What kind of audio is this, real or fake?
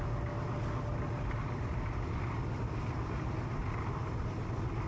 real